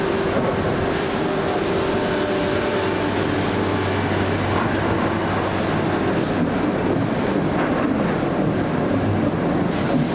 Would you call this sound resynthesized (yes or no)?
no